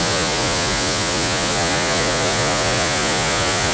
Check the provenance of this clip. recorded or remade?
remade